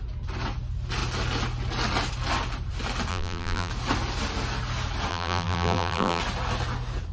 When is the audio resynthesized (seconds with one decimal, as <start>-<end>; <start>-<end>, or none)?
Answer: 3.1-3.7; 5.1-6.2